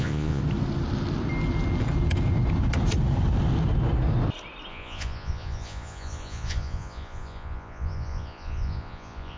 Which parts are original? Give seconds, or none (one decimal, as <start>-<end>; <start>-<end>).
0.4-4.7